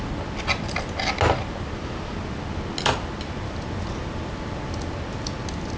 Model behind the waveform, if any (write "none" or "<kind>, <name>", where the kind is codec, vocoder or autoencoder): none